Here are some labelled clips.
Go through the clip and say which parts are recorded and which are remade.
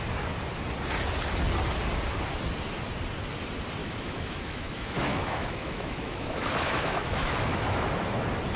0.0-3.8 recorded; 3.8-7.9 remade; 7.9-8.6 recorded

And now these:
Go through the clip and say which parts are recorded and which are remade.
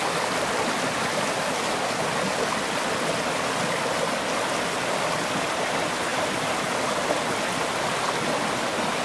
0.0-9.0 recorded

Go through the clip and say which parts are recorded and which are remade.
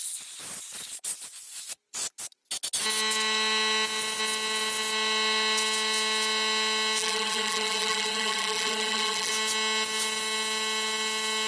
0.0-7.0 recorded; 7.0-9.3 remade; 9.3-11.5 recorded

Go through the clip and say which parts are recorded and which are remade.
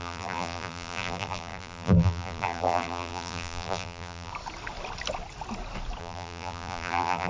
0.0-4.3 remade; 4.3-6.0 recorded; 6.0-7.3 remade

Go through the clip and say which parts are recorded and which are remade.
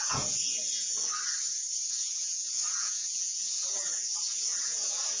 0.0-1.1 remade; 1.1-1.9 recorded; 1.9-5.2 remade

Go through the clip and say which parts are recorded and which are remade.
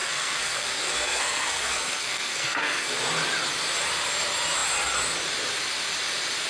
0.0-2.9 remade; 2.9-6.5 recorded